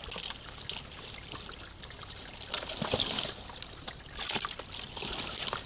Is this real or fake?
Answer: real